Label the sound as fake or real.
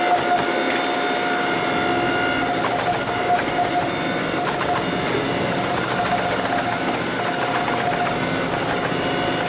real